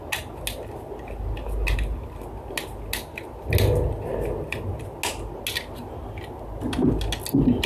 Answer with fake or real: real